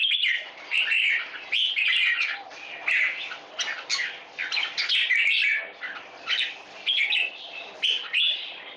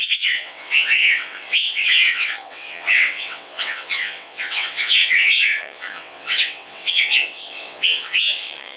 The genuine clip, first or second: first